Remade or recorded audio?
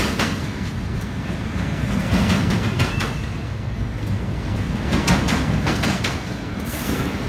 remade